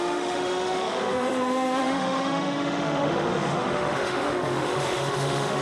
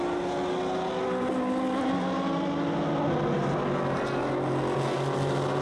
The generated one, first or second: first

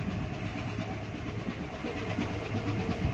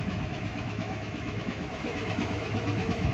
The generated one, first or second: second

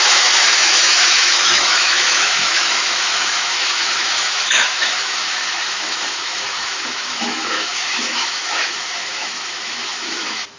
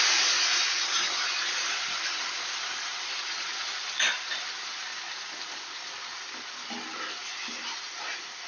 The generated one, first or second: first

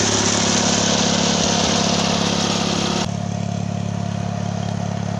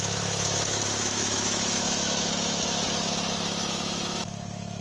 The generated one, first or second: second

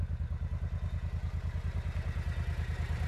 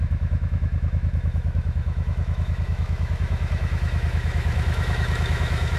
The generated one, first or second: second